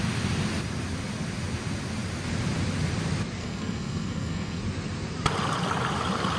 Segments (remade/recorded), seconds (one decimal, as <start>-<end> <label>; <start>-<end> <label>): 0.0-3.4 recorded; 3.4-4.6 remade; 4.6-6.4 recorded